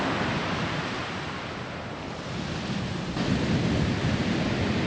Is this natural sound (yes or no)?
yes